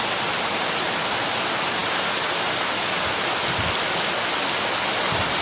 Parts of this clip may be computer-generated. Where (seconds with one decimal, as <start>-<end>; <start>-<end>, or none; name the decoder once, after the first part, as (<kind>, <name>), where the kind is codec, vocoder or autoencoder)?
none